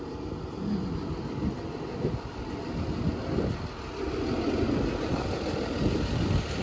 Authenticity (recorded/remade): recorded